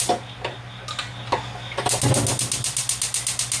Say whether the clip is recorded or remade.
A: recorded